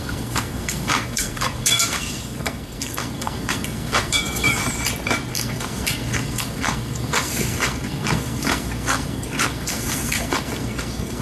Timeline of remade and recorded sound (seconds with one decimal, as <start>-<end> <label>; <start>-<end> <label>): 0.0-4.6 remade; 4.6-5.3 recorded; 5.3-11.2 remade